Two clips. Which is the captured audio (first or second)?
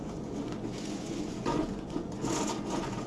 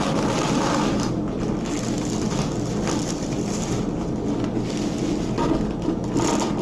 second